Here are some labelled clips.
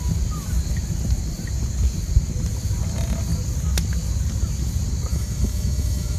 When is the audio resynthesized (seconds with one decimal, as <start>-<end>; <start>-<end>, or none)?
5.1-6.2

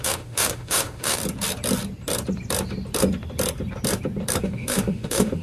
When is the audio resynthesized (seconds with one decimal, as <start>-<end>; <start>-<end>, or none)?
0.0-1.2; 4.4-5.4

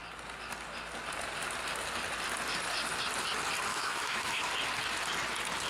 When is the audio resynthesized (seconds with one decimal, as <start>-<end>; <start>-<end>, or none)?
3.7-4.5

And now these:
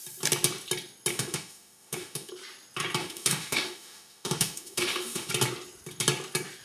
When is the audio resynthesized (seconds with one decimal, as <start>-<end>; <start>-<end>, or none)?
1.1-2.3; 3.0-5.3

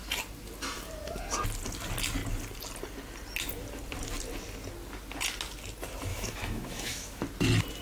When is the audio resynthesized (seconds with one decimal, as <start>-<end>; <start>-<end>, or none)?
6.1-7.2

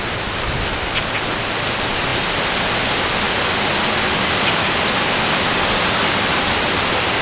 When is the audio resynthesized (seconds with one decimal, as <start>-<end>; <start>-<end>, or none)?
none

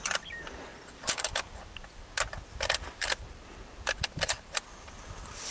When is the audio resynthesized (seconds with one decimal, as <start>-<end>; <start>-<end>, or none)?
none